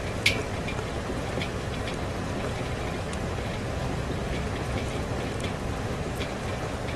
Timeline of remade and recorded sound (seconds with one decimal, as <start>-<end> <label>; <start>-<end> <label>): 0.0-7.0 recorded